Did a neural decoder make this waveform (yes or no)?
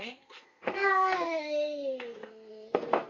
yes